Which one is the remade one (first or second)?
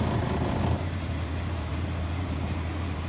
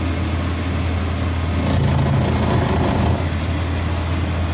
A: first